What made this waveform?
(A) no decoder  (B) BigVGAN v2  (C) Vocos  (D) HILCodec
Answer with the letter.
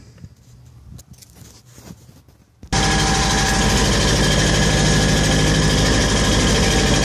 A